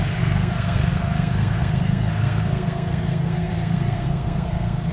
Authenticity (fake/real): fake